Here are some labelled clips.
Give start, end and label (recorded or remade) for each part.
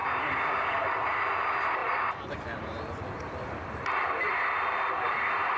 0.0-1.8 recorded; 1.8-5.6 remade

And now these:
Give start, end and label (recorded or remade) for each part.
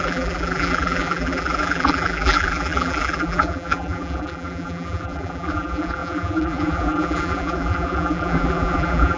0.0-9.2 remade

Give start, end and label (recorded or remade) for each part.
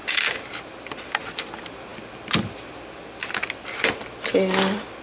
0.0-0.7 remade; 0.7-5.0 recorded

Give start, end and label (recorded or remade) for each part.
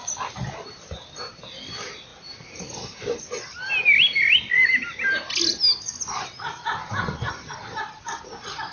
0.0-8.7 recorded